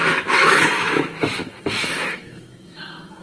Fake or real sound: fake